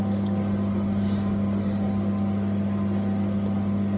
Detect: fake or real real